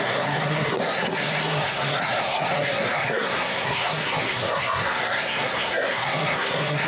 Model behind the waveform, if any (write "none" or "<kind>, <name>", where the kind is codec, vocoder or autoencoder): codec, SNAC